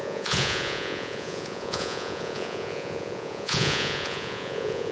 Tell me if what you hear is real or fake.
fake